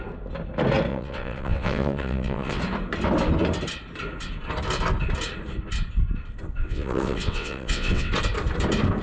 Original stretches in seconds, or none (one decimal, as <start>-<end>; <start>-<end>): 0.0-0.9; 2.6-6.6; 8.1-9.0